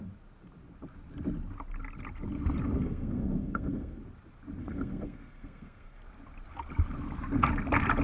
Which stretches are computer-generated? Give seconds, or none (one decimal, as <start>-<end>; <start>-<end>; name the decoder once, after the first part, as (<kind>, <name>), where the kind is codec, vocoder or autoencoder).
2.8-4.0 (codec, SNAC); 4.6-6.0